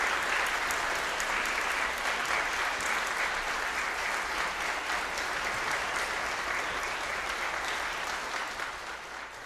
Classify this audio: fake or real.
real